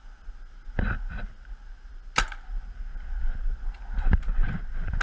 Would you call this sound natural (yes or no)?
yes